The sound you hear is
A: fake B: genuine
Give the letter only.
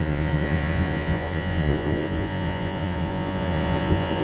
A